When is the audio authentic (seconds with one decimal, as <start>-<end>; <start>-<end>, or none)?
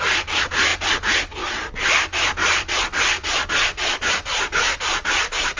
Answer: 0.0-5.6